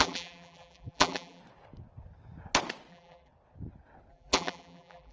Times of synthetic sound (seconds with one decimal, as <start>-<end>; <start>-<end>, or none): 0.0-1.4; 2.9-3.3; 4.1-5.1